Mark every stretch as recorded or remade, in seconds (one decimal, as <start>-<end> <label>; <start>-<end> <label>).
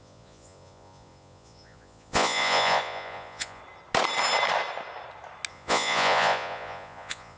0.0-3.6 remade; 3.6-5.5 recorded; 5.5-7.4 remade